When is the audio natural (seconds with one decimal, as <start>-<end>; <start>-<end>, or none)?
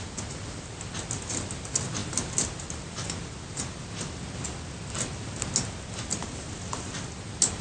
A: 0.0-7.6